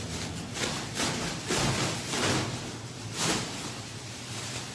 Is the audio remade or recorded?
recorded